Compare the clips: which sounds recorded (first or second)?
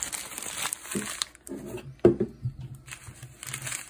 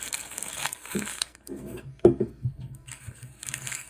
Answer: first